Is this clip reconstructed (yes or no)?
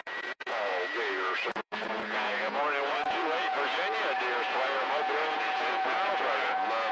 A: yes